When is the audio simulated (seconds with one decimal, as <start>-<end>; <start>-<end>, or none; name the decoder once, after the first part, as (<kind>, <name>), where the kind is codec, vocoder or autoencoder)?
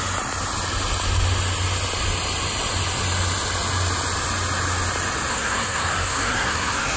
5.3-7.0 (codec, SNAC)